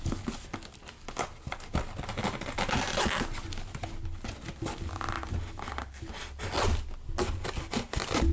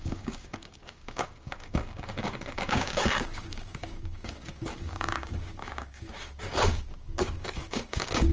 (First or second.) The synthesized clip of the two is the second